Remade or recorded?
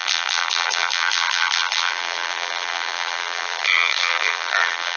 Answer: remade